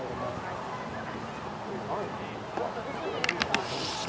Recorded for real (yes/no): yes